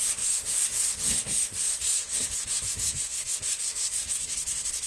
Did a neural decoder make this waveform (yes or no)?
yes